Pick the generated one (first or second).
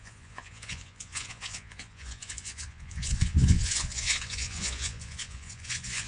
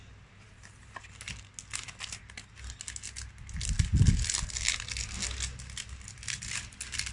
first